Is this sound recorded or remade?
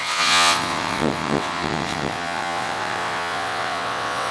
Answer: remade